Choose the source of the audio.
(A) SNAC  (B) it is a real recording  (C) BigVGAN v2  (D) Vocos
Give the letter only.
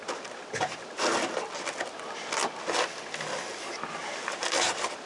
B